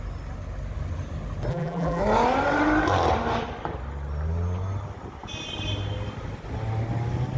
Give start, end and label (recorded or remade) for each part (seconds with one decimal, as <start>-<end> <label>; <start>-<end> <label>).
0.0-1.5 recorded; 1.5-2.0 remade; 2.0-7.4 recorded